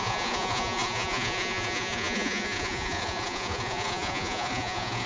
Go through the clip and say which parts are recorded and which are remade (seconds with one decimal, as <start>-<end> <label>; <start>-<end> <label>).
0.0-5.1 remade